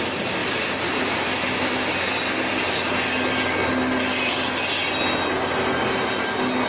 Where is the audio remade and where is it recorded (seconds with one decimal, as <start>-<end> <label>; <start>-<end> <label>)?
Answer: 0.0-6.7 recorded